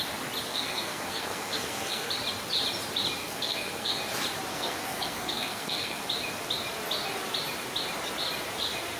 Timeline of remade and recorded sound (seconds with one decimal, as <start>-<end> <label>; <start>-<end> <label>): 0.0-0.5 recorded; 0.5-2.1 remade; 2.1-3.2 recorded; 3.2-4.0 remade; 4.0-4.5 recorded; 4.5-6.0 remade; 6.0-9.0 recorded